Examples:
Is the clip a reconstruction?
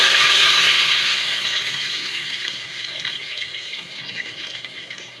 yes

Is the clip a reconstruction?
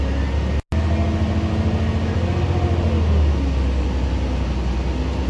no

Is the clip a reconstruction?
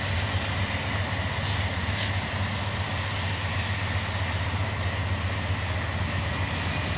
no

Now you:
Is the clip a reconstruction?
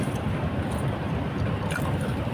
no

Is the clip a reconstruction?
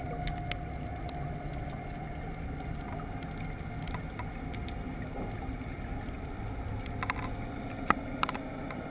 no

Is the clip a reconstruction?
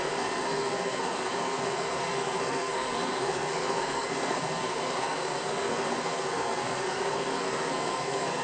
yes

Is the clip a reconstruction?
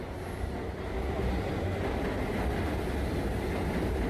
no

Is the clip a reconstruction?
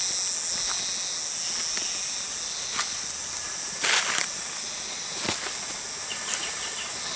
no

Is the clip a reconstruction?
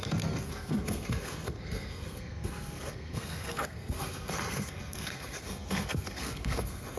yes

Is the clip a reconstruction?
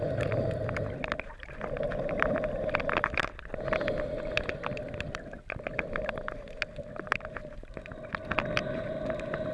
no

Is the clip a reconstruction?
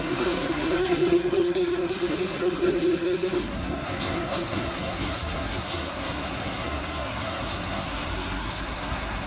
yes